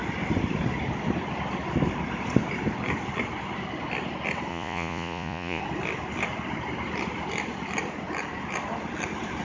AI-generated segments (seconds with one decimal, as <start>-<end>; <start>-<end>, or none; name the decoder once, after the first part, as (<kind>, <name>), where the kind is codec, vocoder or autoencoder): 4.5-5.6 (vocoder, Vocos)